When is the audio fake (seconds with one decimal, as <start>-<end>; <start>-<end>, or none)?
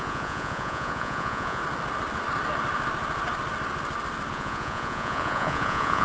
0.0-1.6; 4.3-6.0